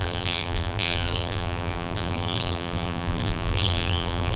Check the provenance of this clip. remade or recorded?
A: remade